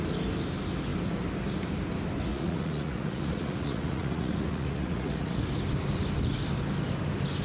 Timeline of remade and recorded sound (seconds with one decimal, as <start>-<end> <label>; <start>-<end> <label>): 0.0-2.3 recorded; 2.3-5.4 remade; 5.4-7.4 recorded